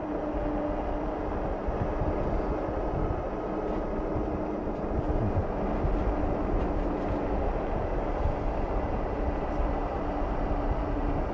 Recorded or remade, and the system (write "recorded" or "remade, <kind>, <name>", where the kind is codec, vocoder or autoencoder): recorded